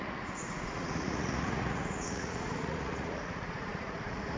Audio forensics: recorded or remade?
remade